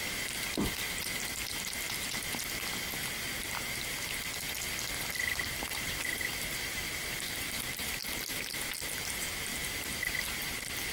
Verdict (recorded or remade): recorded